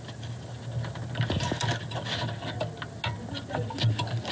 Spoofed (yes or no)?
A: no